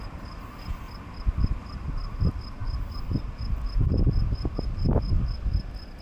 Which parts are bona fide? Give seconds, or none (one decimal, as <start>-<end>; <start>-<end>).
0.0-6.0